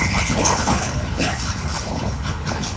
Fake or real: fake